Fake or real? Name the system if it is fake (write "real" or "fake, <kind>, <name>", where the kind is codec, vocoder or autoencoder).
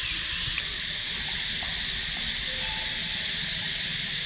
real